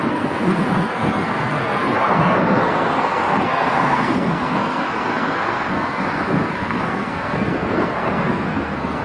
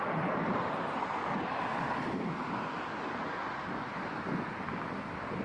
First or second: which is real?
second